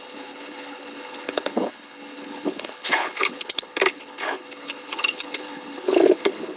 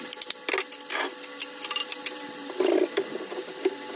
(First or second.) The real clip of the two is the second